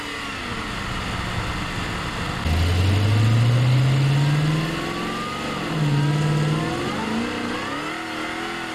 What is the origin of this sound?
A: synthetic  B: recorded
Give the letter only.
B